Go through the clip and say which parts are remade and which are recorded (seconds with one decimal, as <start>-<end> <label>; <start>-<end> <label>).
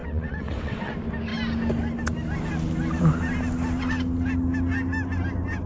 0.0-0.9 remade; 0.9-5.7 recorded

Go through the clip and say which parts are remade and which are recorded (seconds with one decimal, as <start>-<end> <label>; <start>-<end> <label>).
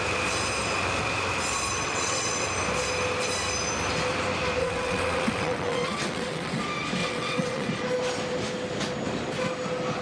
0.0-1.7 recorded; 1.7-2.5 remade; 2.5-4.6 recorded; 4.6-6.6 remade; 6.6-7.0 recorded; 7.0-7.7 remade; 7.7-10.0 recorded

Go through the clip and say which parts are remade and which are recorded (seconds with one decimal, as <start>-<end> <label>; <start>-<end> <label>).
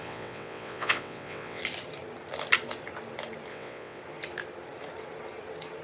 0.0-1.6 remade; 1.6-3.5 recorded; 3.5-4.0 remade; 4.0-5.8 recorded